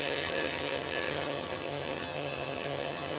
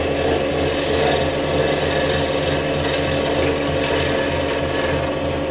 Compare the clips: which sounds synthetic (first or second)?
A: first